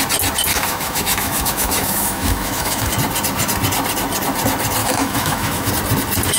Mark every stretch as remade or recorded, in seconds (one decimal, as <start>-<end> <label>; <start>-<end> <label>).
0.0-0.5 recorded; 0.5-2.9 remade; 2.9-4.8 recorded; 4.8-5.7 remade; 5.7-6.4 recorded